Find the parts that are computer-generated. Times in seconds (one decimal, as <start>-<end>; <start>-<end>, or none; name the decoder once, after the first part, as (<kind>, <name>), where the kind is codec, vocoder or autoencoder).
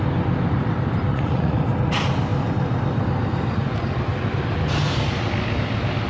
1.1-1.6 (vocoder, Vocos)